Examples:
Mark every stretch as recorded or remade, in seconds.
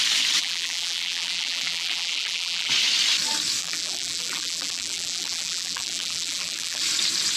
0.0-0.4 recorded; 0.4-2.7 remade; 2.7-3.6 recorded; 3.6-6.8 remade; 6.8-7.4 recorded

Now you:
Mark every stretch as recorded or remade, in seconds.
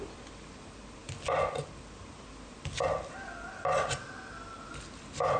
0.0-5.4 recorded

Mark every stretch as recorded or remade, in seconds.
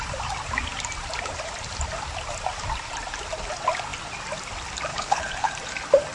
0.0-4.9 recorded; 4.9-5.5 remade; 5.5-6.1 recorded